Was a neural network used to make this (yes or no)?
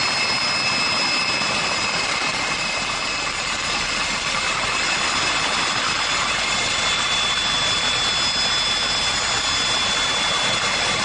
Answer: no